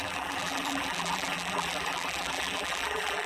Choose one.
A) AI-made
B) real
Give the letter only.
A